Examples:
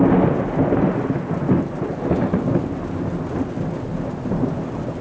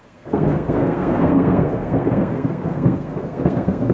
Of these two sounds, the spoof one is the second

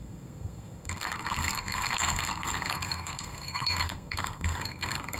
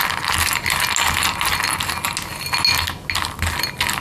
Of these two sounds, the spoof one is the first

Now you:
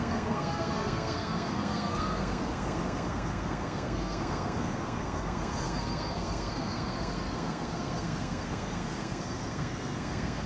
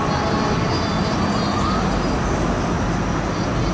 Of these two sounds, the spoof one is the first